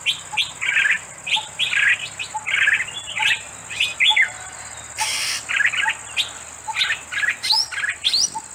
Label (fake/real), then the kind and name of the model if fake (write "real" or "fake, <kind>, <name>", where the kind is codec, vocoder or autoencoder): real